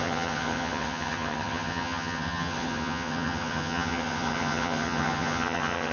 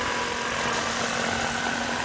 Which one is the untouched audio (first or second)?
second